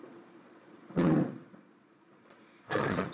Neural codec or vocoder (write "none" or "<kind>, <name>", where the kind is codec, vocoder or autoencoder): vocoder, Vocos